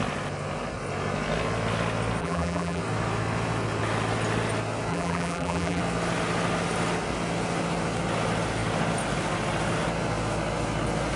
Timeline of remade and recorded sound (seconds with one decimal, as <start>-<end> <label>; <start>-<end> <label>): 0.0-2.2 recorded; 2.2-2.8 remade; 2.8-4.9 recorded; 4.9-5.8 remade; 5.8-11.2 recorded